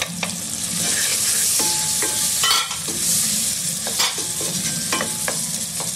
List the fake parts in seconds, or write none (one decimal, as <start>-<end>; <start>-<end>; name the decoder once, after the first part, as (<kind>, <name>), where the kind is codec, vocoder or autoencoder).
1.1-4.0 (vocoder, BigVGAN v2)